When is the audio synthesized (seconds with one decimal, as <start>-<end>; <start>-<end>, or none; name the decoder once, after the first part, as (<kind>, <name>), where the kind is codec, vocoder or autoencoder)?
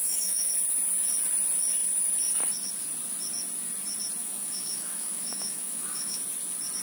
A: 0.0-0.5 (autoencoder, DAC-VAE); 4.2-6.2